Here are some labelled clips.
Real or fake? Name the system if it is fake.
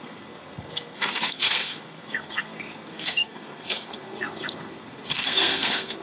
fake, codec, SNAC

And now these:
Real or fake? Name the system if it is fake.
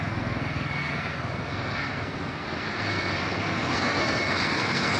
fake, codec, SNAC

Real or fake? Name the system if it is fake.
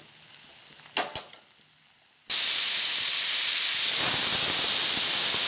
real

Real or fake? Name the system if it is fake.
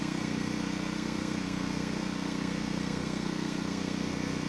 fake, codec, SNAC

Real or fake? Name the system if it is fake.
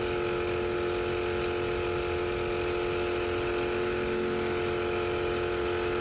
real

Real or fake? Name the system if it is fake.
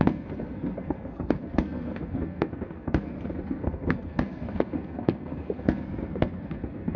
fake, codec, SNAC